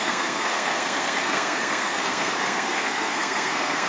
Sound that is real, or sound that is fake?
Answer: fake